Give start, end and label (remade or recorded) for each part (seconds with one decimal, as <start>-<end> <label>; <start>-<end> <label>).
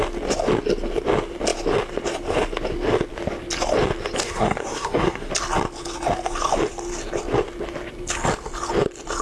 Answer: 0.0-4.2 recorded; 4.2-5.3 remade; 5.3-9.2 recorded